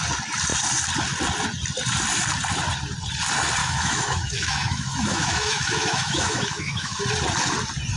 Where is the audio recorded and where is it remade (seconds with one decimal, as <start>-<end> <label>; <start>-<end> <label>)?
0.0-3.6 recorded; 3.6-7.0 remade; 7.0-8.0 recorded